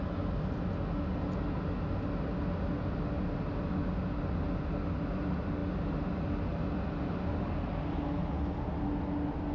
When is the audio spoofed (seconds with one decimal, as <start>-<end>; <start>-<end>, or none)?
none